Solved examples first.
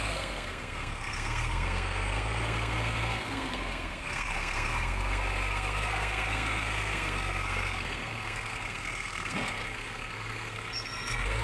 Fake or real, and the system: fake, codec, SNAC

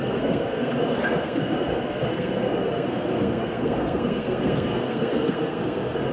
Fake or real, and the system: fake, codec, SNAC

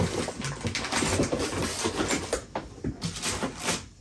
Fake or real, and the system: real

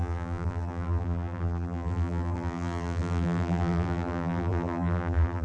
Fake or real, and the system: fake, vocoder, BigVGAN v2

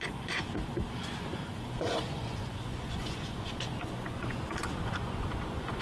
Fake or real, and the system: fake, vocoder, Vocos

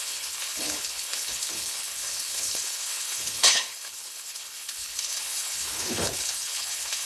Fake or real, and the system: fake, codec, HILCodec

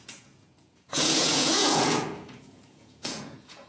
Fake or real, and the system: fake, vocoder, Vocos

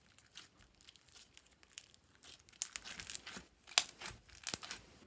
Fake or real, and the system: real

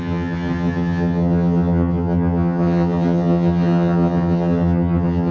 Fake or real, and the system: fake, vocoder, HiFi-GAN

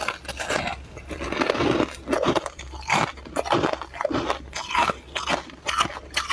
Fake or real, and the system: real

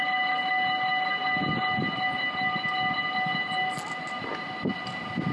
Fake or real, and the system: real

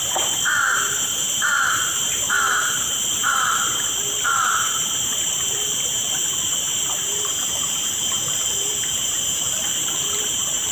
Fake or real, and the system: fake, vocoder, BigVGAN v2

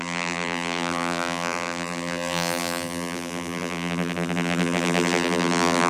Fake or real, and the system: fake, vocoder, BigVGAN v2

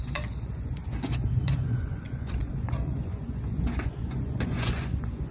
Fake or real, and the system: fake, vocoder, Vocos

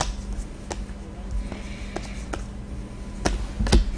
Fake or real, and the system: real